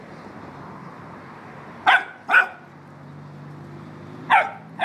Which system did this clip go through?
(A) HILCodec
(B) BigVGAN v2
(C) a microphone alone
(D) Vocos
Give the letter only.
C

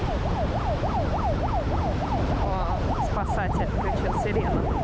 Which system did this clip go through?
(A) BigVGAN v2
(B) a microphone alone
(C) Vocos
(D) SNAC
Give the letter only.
B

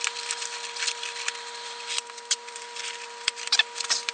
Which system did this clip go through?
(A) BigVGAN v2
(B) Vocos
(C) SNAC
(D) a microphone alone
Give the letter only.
A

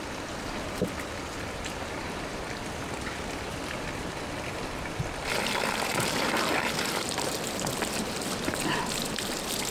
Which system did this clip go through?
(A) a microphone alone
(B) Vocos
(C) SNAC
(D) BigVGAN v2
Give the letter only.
D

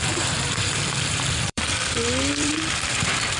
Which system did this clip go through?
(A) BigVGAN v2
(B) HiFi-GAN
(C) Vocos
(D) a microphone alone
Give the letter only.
A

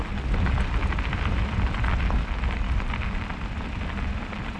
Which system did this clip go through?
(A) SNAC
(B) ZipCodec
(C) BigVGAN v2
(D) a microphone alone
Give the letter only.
D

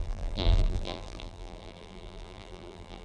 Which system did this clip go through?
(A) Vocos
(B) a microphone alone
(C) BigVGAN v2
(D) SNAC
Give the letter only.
C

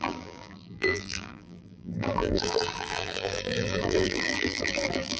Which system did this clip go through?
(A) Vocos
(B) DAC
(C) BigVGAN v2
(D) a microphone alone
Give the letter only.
C